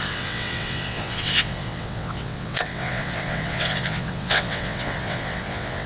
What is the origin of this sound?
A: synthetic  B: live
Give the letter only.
A